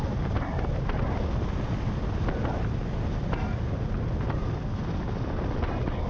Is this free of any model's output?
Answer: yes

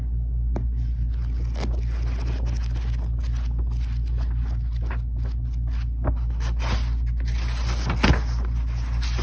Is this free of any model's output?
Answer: yes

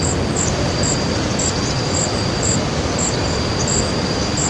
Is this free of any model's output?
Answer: yes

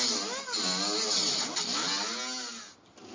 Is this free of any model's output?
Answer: yes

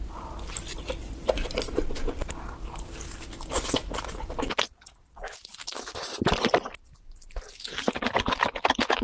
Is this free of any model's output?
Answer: yes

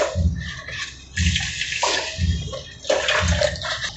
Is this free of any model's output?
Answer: yes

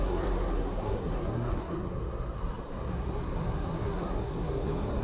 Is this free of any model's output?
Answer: no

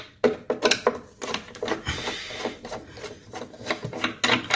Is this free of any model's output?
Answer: yes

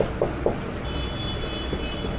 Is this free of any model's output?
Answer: yes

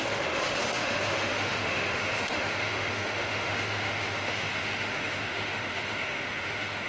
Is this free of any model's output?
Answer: no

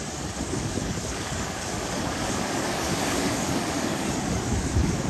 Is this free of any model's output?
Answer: no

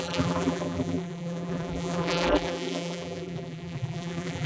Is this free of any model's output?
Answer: no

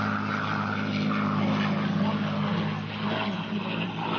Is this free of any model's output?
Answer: yes